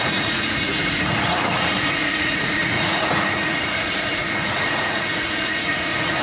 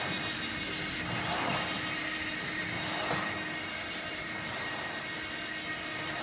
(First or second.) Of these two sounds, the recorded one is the second